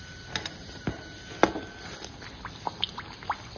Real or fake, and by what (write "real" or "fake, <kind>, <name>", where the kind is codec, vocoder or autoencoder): real